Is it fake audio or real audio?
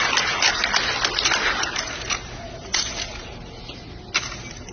real